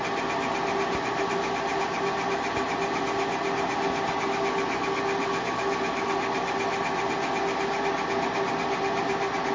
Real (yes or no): yes